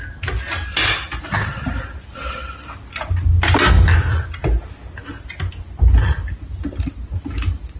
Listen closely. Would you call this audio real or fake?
real